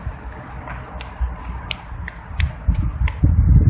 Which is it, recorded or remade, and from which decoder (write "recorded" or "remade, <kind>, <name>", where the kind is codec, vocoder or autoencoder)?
recorded